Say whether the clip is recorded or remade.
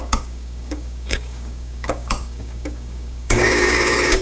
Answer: remade